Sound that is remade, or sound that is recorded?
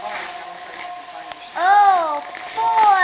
recorded